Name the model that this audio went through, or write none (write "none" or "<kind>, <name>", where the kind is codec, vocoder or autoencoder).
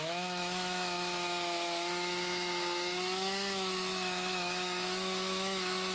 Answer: autoencoder, DAC-VAE